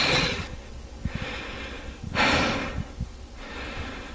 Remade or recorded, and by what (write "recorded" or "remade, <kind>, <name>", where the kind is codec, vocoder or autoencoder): recorded